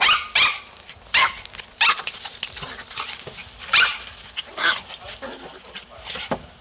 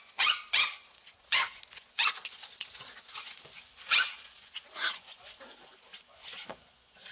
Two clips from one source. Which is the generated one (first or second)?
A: second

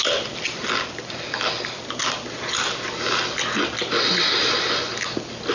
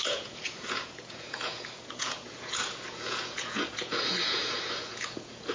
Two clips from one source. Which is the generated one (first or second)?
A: second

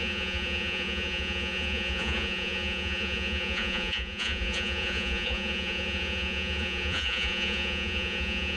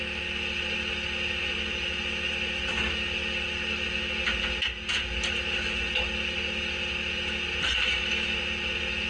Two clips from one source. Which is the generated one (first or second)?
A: first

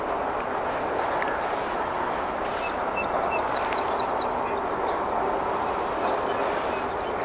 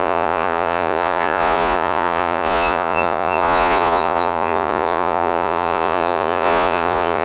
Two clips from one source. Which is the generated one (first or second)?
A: second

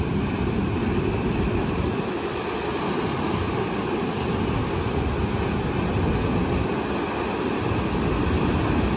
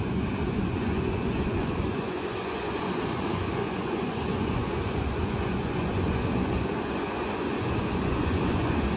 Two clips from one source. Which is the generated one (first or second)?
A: second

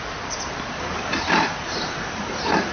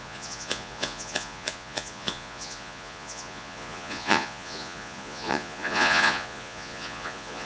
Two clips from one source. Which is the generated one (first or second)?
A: second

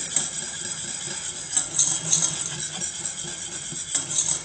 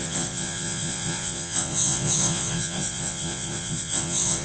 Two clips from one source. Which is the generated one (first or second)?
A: second